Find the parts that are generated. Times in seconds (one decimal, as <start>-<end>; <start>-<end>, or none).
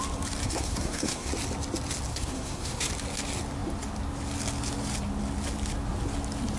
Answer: 0.4-1.3; 2.1-2.9